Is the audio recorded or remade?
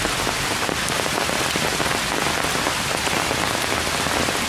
recorded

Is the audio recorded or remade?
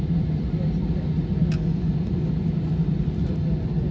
recorded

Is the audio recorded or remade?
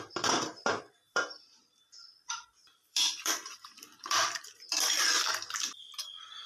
remade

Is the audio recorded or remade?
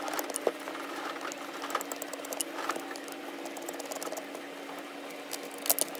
recorded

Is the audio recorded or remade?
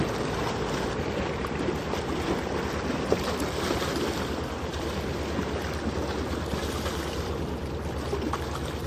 recorded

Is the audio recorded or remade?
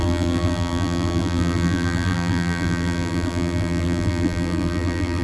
remade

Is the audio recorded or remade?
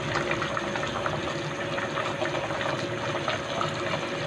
recorded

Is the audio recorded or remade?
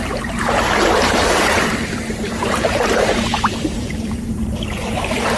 remade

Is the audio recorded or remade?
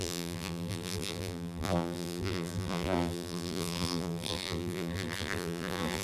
remade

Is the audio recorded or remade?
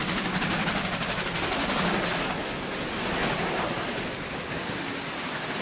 recorded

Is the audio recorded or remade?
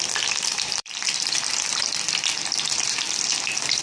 remade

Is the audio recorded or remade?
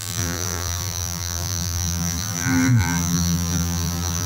remade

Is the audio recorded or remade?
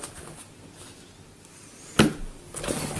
recorded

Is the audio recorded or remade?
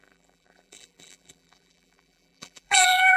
remade